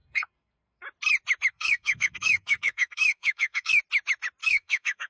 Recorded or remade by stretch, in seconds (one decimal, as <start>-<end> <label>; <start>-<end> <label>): 0.0-0.8 remade; 0.8-1.5 recorded; 1.5-3.8 remade; 3.8-4.4 recorded; 4.4-5.1 remade